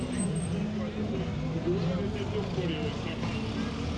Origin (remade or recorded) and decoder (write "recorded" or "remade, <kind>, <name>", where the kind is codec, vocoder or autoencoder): recorded